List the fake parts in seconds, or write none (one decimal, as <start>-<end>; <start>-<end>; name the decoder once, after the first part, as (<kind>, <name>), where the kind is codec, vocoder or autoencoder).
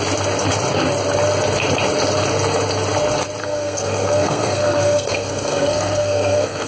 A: 3.4-6.7 (codec, SNAC)